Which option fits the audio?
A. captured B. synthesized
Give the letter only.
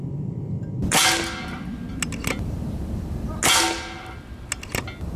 A